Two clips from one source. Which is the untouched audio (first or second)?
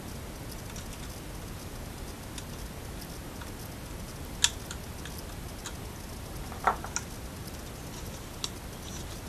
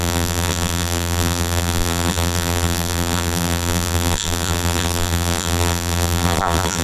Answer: first